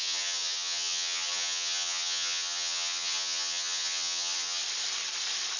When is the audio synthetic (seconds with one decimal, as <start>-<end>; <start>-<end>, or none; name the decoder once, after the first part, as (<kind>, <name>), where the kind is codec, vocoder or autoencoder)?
0.0-4.6 (vocoder, HiFi-GAN)